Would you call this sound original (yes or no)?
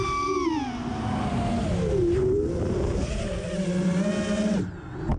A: yes